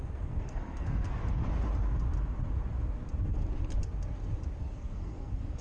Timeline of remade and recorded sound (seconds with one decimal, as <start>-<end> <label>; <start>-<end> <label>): 0.0-1.2 remade; 1.2-4.6 recorded; 4.6-5.6 remade